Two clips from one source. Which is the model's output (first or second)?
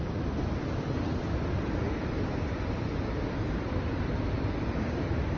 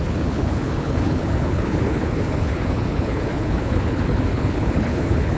second